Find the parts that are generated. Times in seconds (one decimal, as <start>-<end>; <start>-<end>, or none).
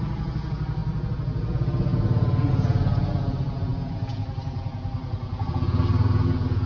none